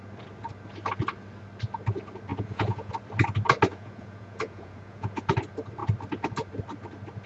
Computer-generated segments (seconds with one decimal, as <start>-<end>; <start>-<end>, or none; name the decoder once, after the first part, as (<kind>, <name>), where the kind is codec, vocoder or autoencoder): 2.3-2.9 (vocoder, Vocos); 3.7-5.3